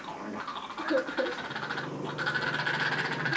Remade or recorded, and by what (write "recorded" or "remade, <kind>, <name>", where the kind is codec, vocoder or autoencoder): recorded